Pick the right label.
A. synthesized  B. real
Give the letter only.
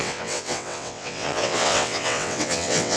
A